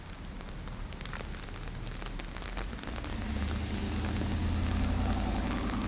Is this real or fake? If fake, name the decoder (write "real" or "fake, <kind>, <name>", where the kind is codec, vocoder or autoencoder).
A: real